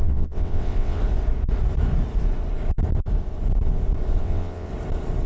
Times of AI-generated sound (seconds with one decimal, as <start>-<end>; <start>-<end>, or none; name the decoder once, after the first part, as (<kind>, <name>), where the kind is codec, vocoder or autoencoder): 0.0-1.0 (vocoder, WaveNeXt); 4.2-4.7